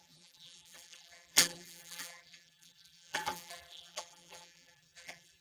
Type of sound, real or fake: fake